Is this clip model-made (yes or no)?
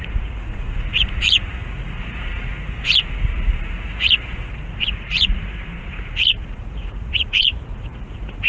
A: yes